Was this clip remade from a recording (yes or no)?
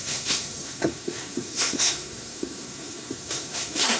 yes